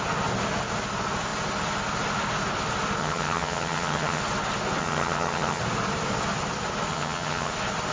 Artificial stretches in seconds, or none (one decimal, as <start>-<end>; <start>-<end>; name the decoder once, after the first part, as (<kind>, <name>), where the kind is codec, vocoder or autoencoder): 3.0-4.2 (vocoder, HiFi-GAN); 4.8-5.6; 6.9-7.5